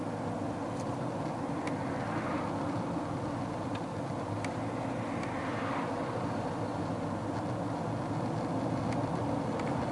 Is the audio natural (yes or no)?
yes